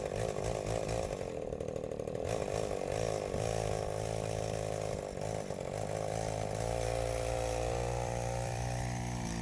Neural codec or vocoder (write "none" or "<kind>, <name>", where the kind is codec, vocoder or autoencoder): vocoder, BigVGAN v2